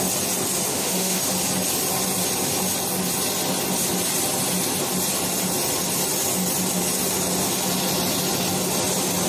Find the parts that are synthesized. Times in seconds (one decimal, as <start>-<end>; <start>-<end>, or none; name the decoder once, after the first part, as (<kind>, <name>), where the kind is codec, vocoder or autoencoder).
0.7-1.2 (autoencoder, DAC-VAE)